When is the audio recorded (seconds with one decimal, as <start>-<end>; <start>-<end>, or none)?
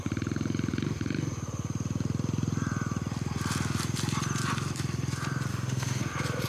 0.0-5.5; 6.0-6.5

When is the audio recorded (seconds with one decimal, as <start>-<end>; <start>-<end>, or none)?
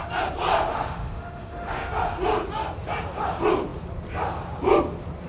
0.0-0.7; 1.9-5.3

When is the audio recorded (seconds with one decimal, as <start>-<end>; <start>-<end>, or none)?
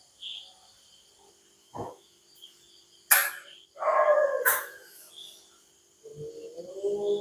0.0-1.6; 2.2-4.3; 5.1-7.2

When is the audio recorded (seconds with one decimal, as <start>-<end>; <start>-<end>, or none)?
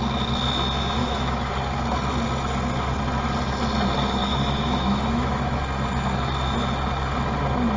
0.0-1.0; 1.5-4.2; 5.6-7.8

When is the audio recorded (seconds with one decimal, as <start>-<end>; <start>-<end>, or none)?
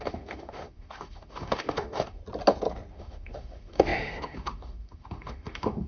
2.2-2.9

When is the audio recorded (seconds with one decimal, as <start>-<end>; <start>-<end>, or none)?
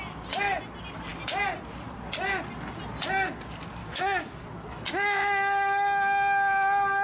0.0-3.8; 4.4-7.0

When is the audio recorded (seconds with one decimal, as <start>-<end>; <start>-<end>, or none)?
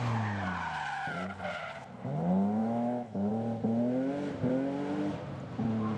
0.0-2.6; 3.3-6.0